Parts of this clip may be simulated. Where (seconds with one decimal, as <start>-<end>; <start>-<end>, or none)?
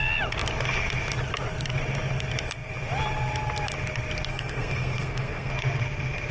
4.3-5.5